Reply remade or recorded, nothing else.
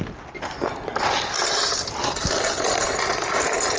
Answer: recorded